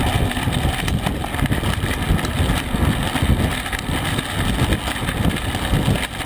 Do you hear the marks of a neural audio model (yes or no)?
no